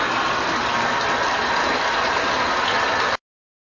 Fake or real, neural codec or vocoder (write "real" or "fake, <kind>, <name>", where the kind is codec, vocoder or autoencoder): real